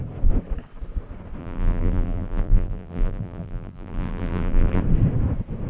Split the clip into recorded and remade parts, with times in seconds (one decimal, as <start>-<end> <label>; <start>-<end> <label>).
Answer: 0.0-1.4 recorded; 1.4-4.8 remade; 4.8-5.7 recorded